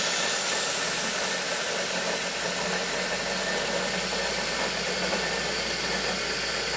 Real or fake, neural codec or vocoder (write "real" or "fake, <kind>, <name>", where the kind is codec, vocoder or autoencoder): real